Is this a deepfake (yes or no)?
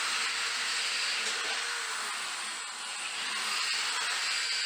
no